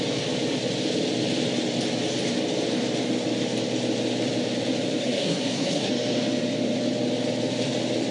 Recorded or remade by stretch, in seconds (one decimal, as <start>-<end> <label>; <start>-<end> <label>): 0.0-5.0 recorded; 5.0-5.9 remade; 5.9-8.1 recorded